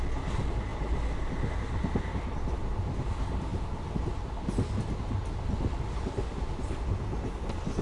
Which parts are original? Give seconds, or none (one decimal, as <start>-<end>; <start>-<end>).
0.0-7.8